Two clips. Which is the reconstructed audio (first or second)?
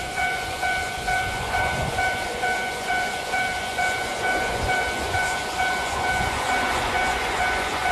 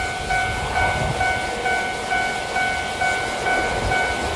first